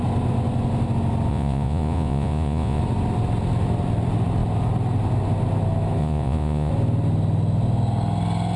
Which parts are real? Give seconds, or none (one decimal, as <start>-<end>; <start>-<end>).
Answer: 0.0-1.3; 2.8-6.0; 6.7-8.6